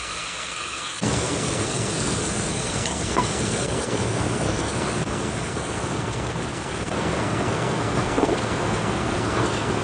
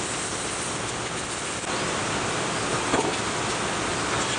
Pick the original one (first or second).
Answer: second